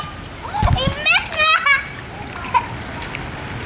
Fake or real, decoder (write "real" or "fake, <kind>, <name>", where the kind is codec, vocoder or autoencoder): real